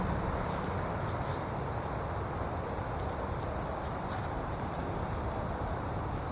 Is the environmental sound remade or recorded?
recorded